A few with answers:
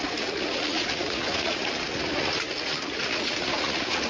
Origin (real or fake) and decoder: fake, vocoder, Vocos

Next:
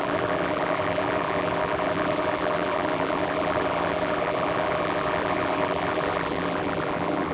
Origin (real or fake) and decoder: fake, vocoder, BigVGAN v2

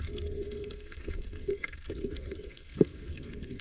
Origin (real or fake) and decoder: fake, codec, SNAC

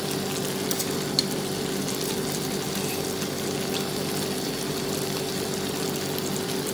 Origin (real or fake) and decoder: real